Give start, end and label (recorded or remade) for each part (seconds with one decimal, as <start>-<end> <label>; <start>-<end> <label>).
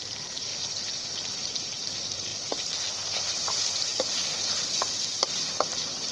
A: 0.0-0.5 remade; 0.5-1.5 recorded; 1.5-2.3 remade; 2.3-3.4 recorded; 3.4-3.9 remade; 3.9-5.1 recorded; 5.1-6.1 remade